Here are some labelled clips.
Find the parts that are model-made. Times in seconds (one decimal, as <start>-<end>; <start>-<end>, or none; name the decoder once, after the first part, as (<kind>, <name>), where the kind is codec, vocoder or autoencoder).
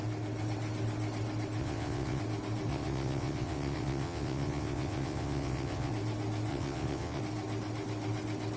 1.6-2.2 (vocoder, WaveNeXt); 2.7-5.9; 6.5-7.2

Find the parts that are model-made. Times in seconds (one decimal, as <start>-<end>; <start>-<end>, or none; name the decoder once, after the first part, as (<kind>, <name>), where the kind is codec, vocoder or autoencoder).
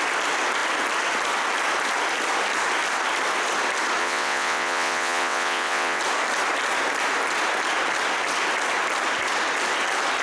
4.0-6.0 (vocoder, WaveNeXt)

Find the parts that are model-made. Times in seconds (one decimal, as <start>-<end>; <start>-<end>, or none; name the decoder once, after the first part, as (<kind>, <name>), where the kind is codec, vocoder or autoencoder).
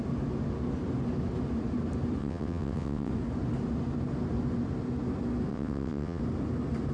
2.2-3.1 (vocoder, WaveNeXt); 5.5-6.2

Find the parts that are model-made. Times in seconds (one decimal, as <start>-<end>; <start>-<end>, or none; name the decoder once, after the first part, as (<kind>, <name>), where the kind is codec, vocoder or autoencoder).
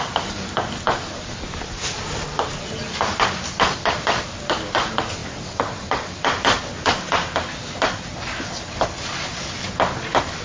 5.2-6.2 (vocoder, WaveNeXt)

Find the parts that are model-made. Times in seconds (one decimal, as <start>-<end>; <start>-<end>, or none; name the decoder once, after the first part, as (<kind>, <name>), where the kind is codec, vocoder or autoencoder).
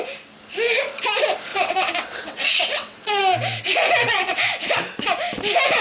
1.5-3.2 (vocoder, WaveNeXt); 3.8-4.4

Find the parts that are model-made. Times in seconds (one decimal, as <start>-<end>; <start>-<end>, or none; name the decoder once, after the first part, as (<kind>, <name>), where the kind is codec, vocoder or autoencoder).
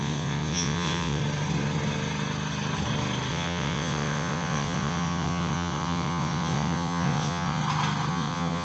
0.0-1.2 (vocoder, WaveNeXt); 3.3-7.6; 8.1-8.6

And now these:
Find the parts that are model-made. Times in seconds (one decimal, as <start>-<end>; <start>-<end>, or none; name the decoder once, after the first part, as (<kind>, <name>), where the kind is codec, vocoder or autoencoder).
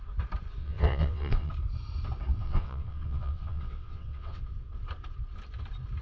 0.6-1.5 (vocoder, WaveNeXt); 2.3-4.4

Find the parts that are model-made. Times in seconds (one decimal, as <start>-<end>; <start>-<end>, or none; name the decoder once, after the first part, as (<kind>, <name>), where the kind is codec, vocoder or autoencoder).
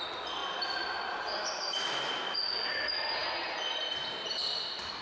none